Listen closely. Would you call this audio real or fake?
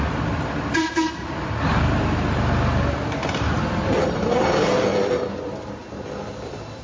real